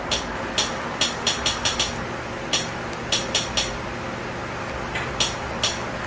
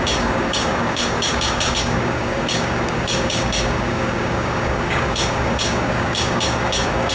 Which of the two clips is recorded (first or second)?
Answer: first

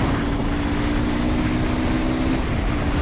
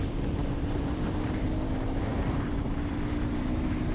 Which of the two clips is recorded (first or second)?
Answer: first